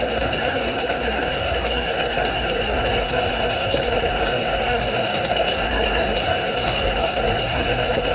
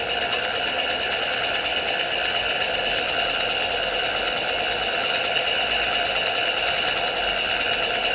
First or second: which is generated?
first